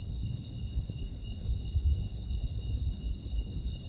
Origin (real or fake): fake